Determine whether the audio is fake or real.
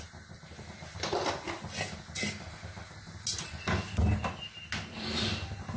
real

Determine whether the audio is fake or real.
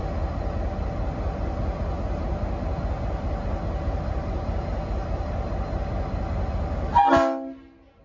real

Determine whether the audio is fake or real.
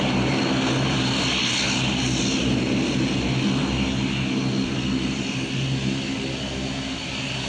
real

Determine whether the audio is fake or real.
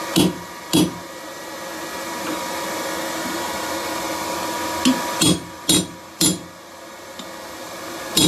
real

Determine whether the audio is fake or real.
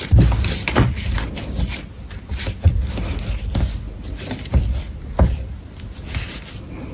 real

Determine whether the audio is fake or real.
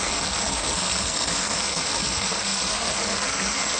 fake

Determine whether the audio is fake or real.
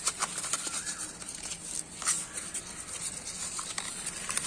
real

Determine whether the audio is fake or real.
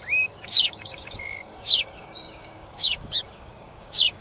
fake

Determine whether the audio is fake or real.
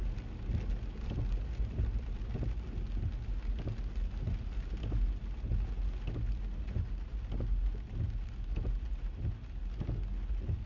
real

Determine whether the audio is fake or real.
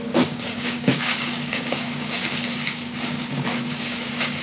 fake